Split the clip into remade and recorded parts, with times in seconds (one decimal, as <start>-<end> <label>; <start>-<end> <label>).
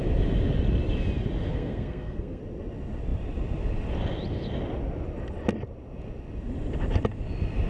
0.0-1.5 recorded; 1.5-2.4 remade; 2.4-7.7 recorded